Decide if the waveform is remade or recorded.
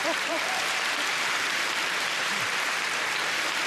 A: remade